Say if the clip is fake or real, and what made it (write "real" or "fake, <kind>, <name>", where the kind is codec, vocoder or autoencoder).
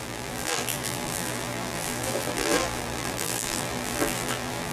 fake, vocoder, BigVGAN v2